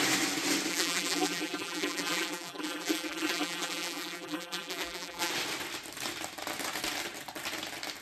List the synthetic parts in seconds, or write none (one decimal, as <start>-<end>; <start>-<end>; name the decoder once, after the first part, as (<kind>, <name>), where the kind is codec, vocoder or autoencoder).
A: 0.7-5.3 (vocoder, BigVGAN v2)